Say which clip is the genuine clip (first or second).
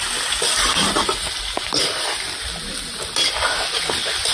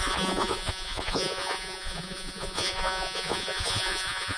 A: first